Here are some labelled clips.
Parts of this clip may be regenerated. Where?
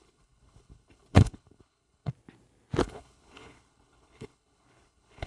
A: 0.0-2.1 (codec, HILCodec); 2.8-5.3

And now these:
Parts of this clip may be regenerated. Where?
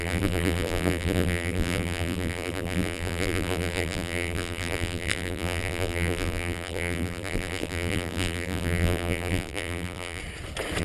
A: 0.0-10.2 (vocoder, BigVGAN v2)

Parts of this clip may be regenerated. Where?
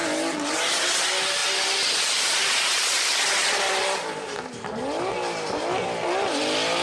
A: none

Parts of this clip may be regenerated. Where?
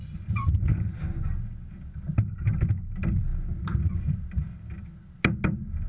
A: none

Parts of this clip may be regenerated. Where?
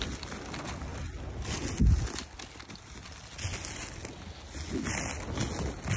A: none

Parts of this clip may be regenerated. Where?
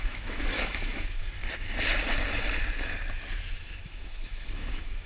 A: 0.0-1.2 (autoencoder, DAC-VAE); 3.5-5.1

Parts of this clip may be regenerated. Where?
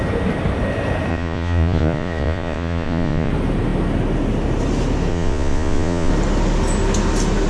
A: 1.1-3.3 (vocoder, Vocos); 5.1-6.1